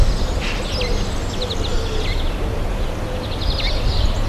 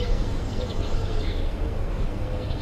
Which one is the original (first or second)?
first